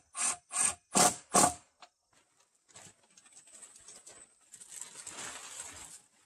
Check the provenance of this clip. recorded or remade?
recorded